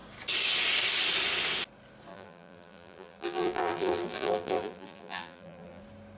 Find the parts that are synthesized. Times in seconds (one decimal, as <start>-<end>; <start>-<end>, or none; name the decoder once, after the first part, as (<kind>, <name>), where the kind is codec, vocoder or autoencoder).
2.1-5.8 (vocoder, BigVGAN v2)